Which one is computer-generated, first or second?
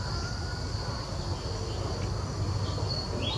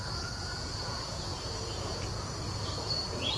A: second